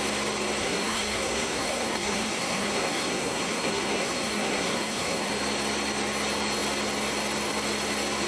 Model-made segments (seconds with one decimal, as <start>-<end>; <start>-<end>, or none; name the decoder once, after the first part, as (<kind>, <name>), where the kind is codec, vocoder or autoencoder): 0.6-5.3 (codec, SNAC)

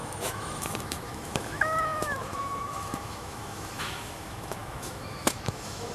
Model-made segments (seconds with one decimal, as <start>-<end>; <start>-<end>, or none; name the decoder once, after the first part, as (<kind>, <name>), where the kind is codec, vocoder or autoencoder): 0.0-5.9 (autoencoder, DAC-VAE)

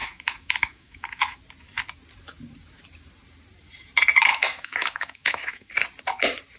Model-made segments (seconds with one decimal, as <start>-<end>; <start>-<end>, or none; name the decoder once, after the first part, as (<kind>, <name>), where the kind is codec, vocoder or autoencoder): 0.0-1.4 (autoencoder, DAC-VAE); 4.3-5.7

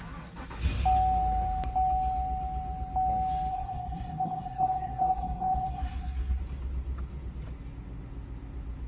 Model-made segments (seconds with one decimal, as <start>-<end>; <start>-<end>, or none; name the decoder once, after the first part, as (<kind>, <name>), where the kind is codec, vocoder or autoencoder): 3.5-6.4 (codec, SNAC)